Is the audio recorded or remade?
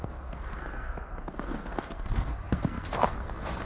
remade